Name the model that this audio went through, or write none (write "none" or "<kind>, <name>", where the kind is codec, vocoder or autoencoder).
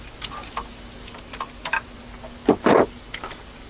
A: none